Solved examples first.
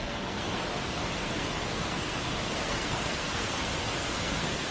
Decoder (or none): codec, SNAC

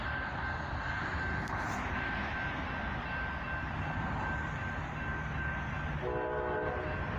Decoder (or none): none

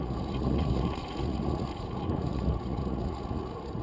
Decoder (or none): vocoder, Vocos